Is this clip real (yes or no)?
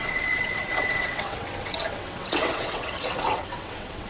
no